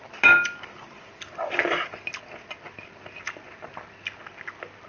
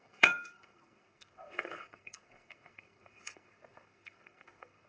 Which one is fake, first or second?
second